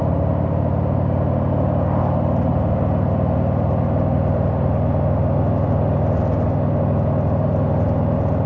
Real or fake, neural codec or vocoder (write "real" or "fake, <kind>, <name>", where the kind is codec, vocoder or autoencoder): real